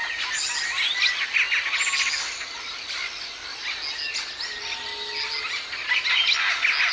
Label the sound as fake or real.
real